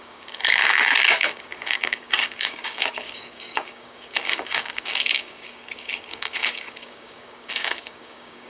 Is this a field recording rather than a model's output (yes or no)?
no